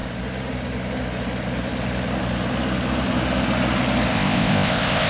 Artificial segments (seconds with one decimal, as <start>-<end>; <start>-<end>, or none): 4.1-5.1